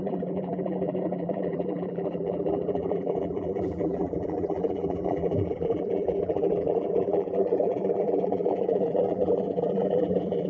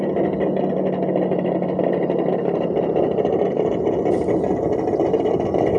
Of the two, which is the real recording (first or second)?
second